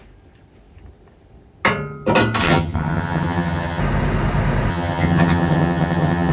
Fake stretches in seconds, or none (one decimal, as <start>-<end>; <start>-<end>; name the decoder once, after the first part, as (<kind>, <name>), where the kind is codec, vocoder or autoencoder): 2.4-3.8 (vocoder, HiFi-GAN); 4.7-6.3